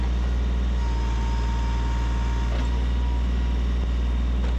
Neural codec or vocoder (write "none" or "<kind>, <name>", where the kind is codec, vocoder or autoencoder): none